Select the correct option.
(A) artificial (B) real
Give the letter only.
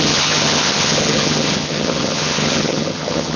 A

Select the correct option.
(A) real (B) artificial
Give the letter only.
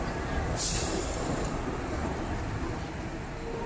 A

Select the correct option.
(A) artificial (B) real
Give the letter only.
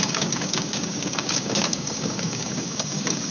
A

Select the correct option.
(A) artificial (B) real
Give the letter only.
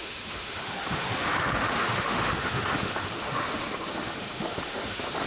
A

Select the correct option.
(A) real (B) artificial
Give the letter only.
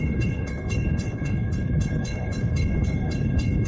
B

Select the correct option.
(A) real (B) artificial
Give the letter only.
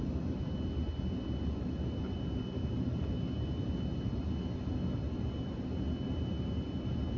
A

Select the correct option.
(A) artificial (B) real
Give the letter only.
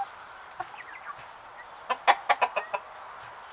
B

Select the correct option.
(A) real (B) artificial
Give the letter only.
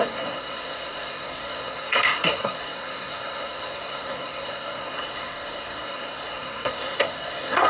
B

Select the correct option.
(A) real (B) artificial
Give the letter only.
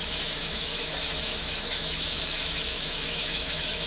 B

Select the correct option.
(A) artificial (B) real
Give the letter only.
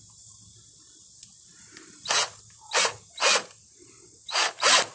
B